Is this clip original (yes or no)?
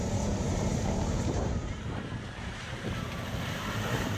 no